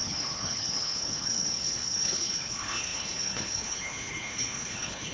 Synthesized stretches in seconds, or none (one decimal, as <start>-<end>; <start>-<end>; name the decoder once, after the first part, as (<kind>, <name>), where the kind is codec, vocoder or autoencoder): 0.0-5.1 (codec, HILCodec)